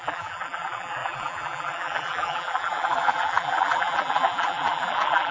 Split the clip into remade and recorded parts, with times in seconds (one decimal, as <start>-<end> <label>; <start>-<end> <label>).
0.0-5.3 remade